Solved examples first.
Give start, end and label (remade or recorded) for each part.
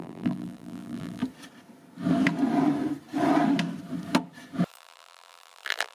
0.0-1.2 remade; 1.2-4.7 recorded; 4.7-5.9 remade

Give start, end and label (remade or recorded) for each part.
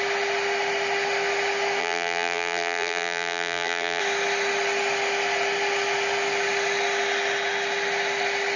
0.0-1.8 recorded; 1.8-4.0 remade; 4.0-8.6 recorded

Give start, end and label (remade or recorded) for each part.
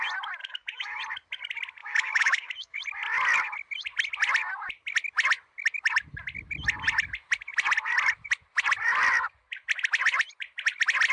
0.0-0.4 recorded; 0.4-1.0 remade; 1.0-1.8 recorded; 1.8-2.8 remade; 2.8-11.1 recorded